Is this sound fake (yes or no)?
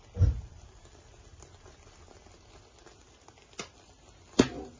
no